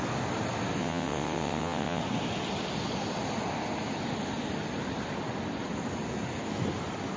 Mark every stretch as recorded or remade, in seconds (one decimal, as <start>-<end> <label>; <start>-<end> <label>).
0.0-0.8 recorded; 0.8-2.0 remade; 2.0-7.2 recorded